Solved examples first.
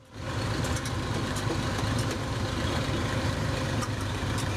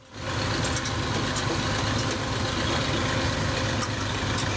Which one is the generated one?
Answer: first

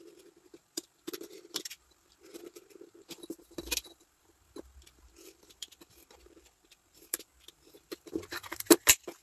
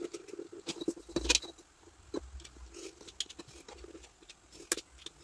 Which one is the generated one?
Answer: first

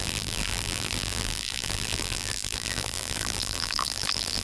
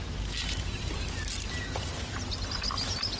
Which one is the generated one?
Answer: first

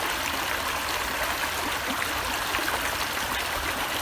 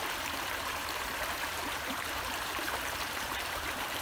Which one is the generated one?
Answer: second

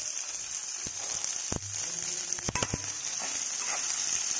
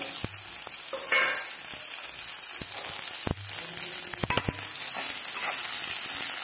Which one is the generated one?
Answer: first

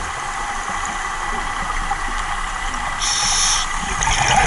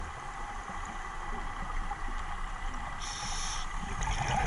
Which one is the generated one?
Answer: second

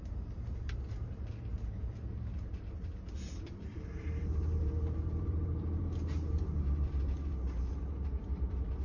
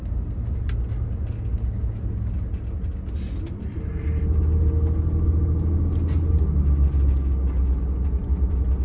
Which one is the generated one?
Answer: first